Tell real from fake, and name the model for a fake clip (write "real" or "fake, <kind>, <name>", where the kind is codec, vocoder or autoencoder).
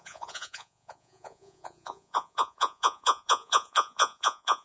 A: fake, vocoder, Vocos